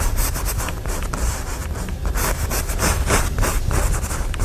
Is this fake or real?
real